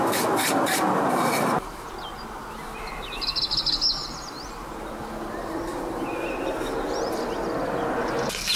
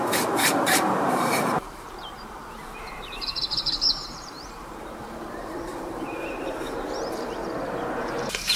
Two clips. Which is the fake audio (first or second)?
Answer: second